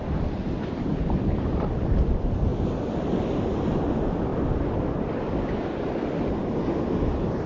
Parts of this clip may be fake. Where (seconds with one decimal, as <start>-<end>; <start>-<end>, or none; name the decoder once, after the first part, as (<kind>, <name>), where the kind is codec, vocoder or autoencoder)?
none